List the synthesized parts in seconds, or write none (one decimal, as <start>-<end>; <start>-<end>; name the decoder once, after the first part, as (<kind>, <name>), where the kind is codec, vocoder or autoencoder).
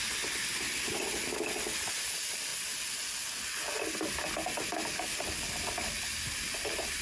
none